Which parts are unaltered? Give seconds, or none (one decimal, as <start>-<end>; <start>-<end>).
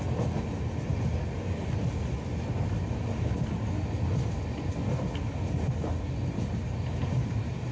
0.0-7.7